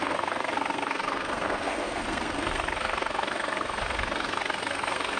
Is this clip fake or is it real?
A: fake